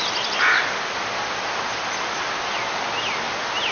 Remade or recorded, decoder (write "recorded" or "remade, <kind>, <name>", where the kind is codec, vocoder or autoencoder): recorded